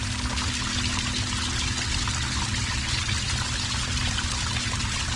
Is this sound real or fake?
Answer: real